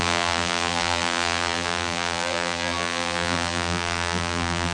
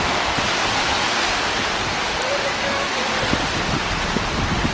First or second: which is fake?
first